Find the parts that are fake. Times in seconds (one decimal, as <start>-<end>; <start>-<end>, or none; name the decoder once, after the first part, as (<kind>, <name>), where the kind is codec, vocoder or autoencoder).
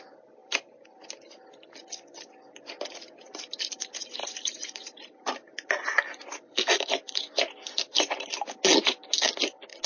0.4-1.1 (vocoder, BigVGAN v2); 4.2-7.2